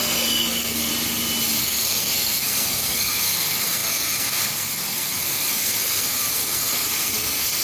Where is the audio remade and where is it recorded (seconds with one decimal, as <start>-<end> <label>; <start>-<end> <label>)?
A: 0.0-0.9 remade; 0.9-1.6 recorded; 1.6-7.6 remade